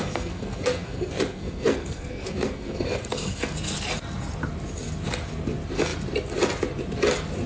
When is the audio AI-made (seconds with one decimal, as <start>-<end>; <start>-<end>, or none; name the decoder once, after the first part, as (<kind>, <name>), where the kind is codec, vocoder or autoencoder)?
0.0-3.5 (codec, SNAC)